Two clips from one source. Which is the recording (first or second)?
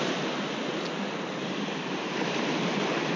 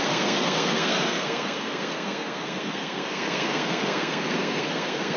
first